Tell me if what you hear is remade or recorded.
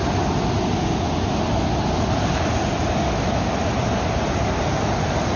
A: recorded